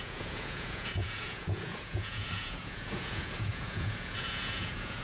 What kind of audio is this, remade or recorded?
remade